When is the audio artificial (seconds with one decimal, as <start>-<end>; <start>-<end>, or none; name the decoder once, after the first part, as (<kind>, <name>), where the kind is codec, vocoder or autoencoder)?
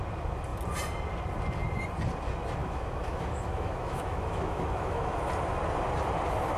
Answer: 2.6-5.1 (autoencoder, DAC-VAE)